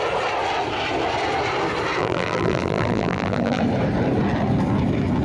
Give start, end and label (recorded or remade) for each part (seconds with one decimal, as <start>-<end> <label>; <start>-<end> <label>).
0.0-2.0 recorded; 2.0-3.6 remade; 3.6-5.2 recorded